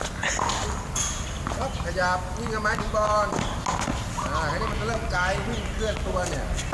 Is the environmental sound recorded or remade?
recorded